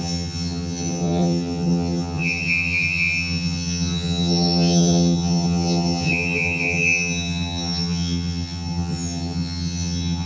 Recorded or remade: remade